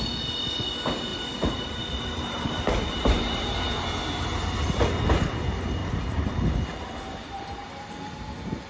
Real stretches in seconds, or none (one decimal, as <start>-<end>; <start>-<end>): 0.0-1.1; 3.6-5.8; 7.7-8.7

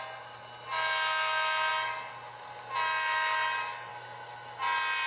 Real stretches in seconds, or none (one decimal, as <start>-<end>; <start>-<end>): 0.0-3.9; 4.6-5.1

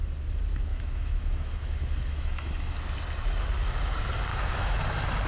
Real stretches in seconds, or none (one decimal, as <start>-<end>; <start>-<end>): 0.0-0.7; 2.8-4.3; 4.8-5.3

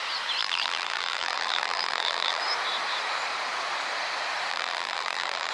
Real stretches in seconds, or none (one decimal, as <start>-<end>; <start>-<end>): 0.0-0.4; 2.4-4.5

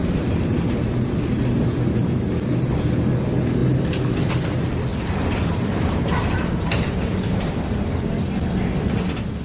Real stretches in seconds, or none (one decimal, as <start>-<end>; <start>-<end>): 0.8-3.6; 4.3-4.9; 7.6-9.4

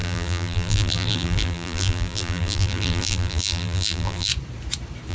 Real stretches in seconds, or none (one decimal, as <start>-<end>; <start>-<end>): 4.3-5.1

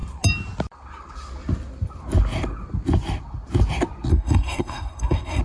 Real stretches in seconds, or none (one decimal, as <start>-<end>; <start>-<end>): 0.0-4.1

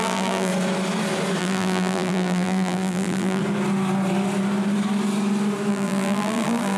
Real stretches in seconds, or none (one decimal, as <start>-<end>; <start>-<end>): 0.5-1.4; 3.4-5.7